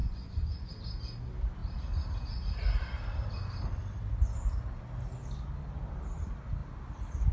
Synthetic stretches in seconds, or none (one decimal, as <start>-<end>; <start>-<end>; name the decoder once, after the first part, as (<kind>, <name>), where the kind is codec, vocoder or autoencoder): 0.0-0.7 (vocoder, Vocos)